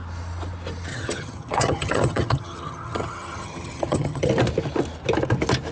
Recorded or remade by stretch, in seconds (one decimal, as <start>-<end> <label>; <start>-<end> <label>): 0.0-0.9 recorded; 0.9-4.3 remade; 4.3-5.7 recorded